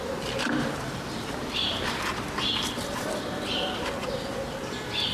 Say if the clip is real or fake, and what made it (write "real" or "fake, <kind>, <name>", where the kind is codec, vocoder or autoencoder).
fake, vocoder, BigVGAN v2